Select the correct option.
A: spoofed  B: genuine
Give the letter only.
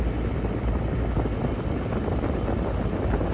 B